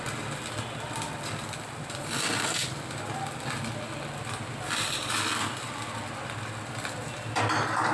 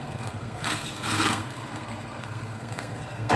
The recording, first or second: first